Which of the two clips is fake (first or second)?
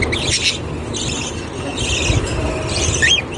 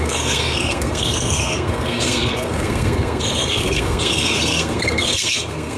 second